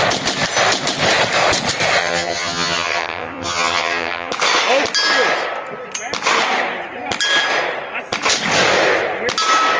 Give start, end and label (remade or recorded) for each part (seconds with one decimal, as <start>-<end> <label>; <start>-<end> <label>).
0.0-2.0 recorded; 2.0-4.3 remade; 4.3-9.8 recorded